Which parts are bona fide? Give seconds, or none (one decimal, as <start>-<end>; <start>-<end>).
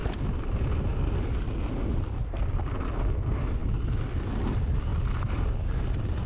0.0-6.3